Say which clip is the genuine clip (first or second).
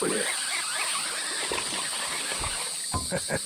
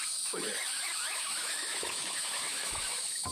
first